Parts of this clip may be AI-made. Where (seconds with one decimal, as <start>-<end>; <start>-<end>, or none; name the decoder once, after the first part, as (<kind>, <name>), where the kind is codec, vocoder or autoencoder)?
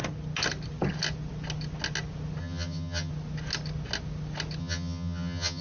2.4-3.1 (vocoder, HiFi-GAN); 4.6-5.6